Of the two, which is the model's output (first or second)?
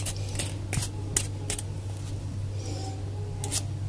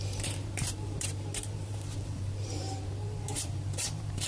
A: second